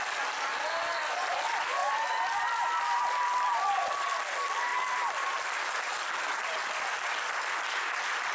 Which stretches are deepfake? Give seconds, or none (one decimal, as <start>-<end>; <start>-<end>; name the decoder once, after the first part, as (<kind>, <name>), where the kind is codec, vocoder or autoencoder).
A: 1.8-3.7 (vocoder, BigVGAN v2); 4.7-5.3